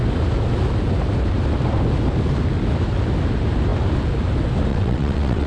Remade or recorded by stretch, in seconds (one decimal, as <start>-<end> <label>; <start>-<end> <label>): 0.0-4.7 recorded; 4.7-5.5 remade